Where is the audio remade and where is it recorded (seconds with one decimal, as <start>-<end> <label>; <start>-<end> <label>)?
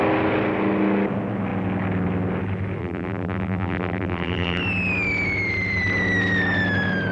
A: 0.0-2.8 recorded; 2.8-4.6 remade; 4.6-7.1 recorded